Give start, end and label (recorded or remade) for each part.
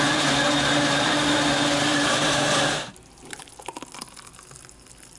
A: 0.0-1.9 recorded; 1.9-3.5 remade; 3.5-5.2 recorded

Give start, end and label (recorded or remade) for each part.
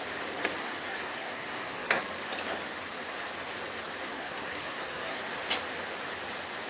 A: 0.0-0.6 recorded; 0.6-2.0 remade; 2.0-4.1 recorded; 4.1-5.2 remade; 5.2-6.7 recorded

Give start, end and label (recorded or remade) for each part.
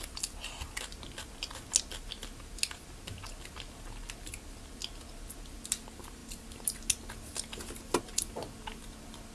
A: 0.0-9.3 recorded